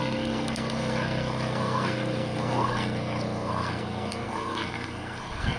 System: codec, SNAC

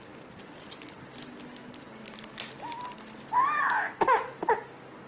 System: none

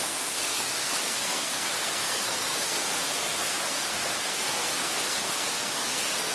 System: codec, SNAC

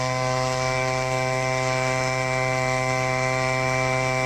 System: autoencoder, DAC-VAE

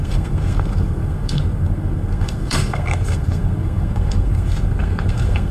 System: codec, SNAC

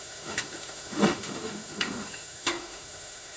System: autoencoder, DAC-VAE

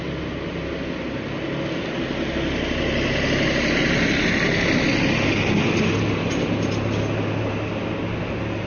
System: none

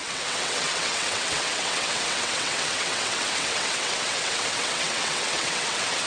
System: vocoder, WaveNeXt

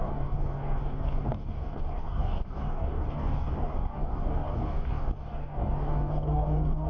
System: codec, DAC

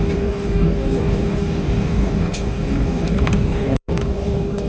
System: codec, DAC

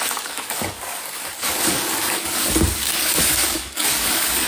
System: codec, DAC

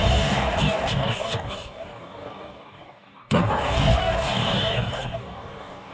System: codec, DAC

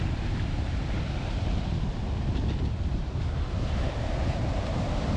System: vocoder, BigVGAN v2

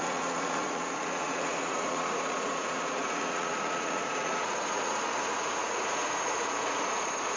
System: vocoder, Vocos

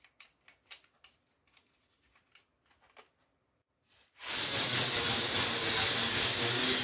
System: none